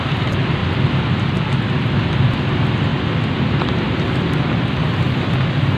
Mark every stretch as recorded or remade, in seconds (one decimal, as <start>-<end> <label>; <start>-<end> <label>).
0.0-5.8 recorded